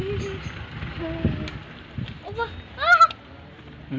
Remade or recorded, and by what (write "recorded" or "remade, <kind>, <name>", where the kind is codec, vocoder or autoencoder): recorded